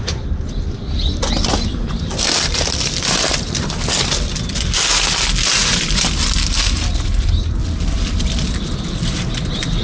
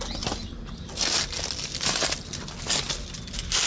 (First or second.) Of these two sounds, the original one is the second